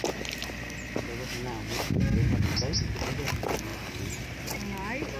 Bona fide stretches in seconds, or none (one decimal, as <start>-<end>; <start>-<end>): 0.0-5.2